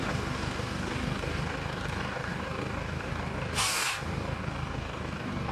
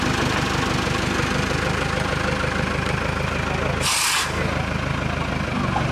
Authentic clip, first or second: second